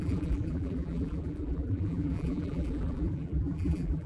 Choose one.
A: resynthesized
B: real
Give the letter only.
A